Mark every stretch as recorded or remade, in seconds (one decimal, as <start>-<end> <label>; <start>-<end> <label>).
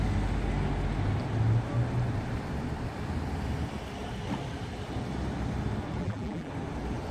0.0-6.0 recorded; 6.0-6.5 remade; 6.5-7.1 recorded